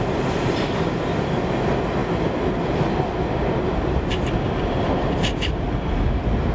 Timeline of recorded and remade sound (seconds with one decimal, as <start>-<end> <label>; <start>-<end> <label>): 0.0-6.5 recorded